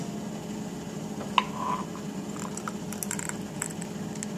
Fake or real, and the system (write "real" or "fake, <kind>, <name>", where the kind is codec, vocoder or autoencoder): real